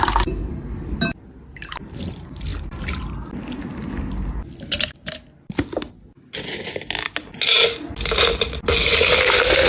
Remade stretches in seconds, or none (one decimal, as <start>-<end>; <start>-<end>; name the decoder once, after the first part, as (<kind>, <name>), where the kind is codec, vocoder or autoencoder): none